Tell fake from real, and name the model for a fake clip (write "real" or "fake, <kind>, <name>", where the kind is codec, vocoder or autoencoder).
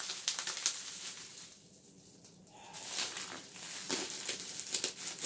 real